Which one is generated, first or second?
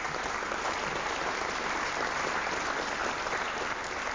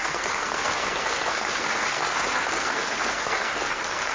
second